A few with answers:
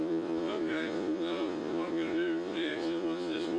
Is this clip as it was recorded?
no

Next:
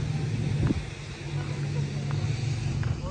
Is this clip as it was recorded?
yes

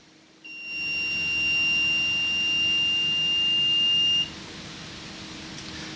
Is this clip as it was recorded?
yes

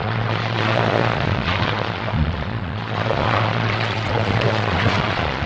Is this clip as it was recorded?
no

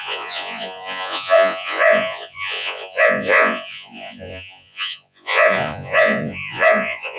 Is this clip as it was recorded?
no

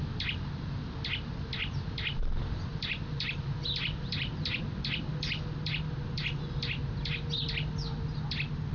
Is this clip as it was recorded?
yes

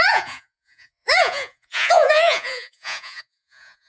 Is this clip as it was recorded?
no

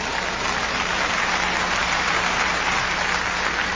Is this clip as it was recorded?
yes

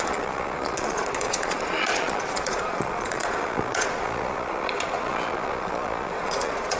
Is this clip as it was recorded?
no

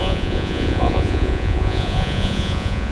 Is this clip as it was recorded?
no